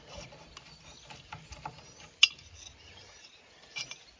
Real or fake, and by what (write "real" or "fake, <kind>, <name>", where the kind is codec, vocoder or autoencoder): real